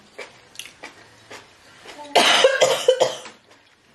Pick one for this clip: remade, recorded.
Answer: recorded